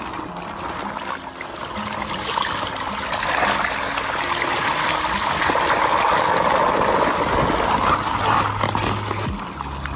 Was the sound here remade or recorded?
recorded